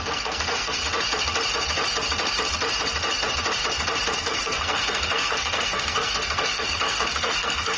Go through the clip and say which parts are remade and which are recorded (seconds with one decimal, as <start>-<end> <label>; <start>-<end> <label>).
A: 0.0-0.8 remade; 0.8-4.2 recorded; 4.2-7.8 remade